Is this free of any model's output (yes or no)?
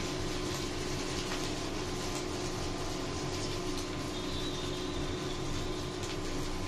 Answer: yes